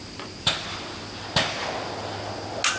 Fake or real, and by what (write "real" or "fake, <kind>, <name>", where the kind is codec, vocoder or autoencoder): real